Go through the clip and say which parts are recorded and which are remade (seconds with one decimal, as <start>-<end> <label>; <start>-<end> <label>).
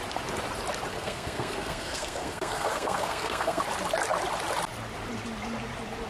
0.0-0.9 recorded; 0.9-3.6 remade; 3.6-6.1 recorded